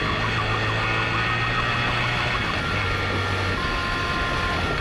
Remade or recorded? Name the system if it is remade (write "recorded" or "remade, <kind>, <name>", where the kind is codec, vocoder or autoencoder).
recorded